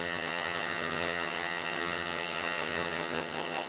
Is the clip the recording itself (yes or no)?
no